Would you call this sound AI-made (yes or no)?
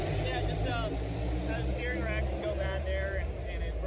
no